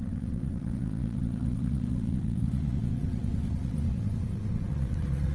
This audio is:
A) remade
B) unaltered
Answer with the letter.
A